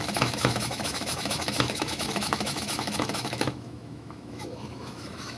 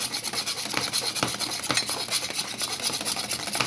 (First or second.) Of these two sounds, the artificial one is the first